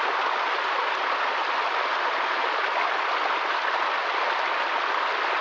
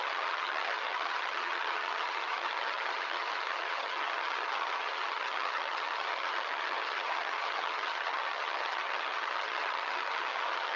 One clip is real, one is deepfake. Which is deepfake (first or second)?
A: second